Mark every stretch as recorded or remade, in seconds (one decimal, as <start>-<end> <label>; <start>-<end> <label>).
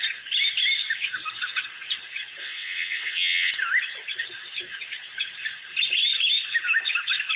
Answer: 0.0-2.4 recorded; 2.4-3.5 remade; 3.5-7.4 recorded